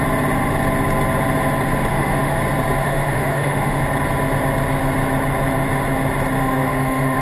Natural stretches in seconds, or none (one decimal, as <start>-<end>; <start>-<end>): 0.0-1.9; 2.4-2.8; 3.8-6.4